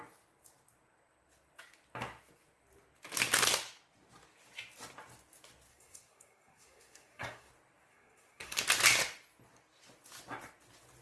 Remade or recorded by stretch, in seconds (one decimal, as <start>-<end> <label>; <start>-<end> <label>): 0.0-5.7 recorded; 5.7-7.5 remade; 7.5-7.9 recorded; 7.9-8.6 remade; 8.6-11.0 recorded